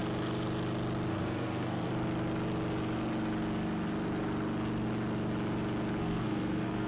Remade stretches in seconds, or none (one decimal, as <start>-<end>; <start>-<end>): 1.1-1.9; 6.0-6.9